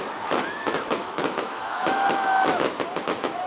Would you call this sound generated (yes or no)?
yes